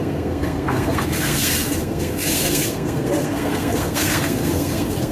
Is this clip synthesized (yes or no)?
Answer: yes